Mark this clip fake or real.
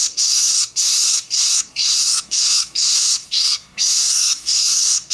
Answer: fake